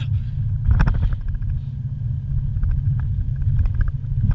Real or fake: real